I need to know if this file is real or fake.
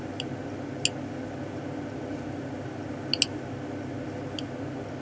real